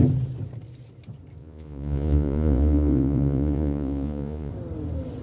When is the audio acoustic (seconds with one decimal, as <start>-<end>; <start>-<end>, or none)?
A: 0.0-1.4; 4.5-5.2